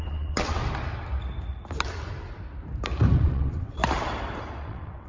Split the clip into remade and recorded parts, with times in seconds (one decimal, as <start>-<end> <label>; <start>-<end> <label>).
0.0-0.6 remade; 0.6-3.1 recorded; 3.1-3.8 remade; 3.8-4.6 recorded; 4.6-5.1 remade